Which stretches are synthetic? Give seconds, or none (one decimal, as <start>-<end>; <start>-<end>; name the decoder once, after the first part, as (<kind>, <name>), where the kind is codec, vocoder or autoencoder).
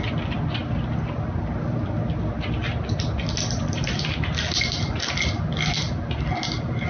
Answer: none